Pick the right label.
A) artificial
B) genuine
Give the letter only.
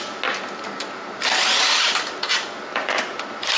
B